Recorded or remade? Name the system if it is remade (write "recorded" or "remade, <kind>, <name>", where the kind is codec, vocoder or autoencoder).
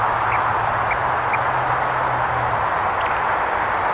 recorded